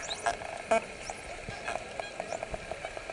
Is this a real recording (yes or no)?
yes